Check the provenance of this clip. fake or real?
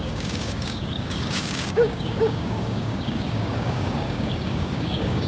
fake